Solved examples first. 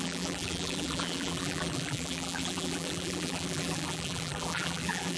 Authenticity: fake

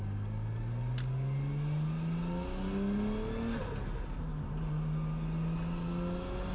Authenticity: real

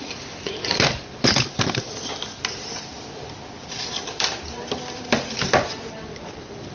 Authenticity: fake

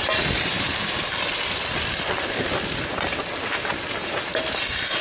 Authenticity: real